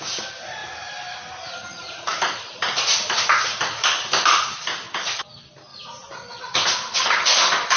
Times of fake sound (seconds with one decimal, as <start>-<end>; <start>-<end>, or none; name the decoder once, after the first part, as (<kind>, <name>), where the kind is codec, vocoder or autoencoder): 2.1-4.6 (vocoder, BigVGAN v2); 5.7-6.4